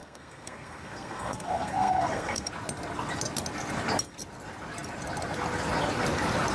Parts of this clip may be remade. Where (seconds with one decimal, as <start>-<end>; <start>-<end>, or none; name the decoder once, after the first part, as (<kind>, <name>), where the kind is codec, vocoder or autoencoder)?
0.0-2.5 (codec, SNAC)